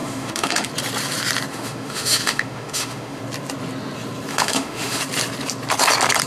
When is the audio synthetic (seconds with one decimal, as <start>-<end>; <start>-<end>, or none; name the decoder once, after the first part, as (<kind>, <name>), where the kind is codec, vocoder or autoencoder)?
0.0-0.7 (autoencoder, DAC-VAE); 1.5-3.2; 4.3-5.0